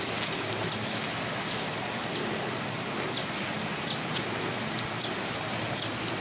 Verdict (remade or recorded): recorded